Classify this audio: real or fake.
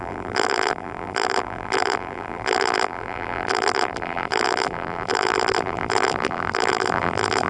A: fake